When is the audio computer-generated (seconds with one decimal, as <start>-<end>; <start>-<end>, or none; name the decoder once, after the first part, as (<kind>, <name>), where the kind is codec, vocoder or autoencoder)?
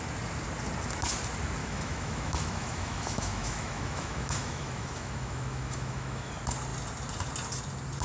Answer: 1.6-6.3 (autoencoder, DAC-VAE)